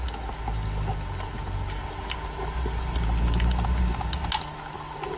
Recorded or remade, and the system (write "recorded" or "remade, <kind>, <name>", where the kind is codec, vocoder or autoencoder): recorded